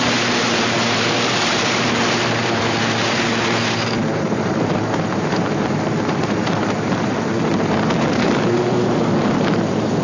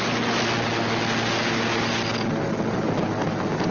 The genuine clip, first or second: second